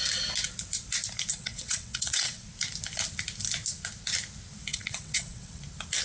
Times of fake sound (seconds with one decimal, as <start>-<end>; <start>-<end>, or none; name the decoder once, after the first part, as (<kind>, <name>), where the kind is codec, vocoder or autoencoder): 1.3-2.5 (vocoder, WaveNeXt); 4.7-5.6